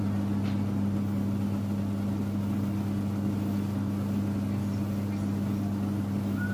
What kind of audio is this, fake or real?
real